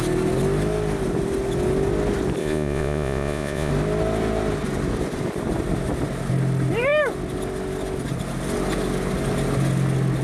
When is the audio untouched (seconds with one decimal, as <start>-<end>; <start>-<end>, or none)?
0.0-2.4; 3.7-10.2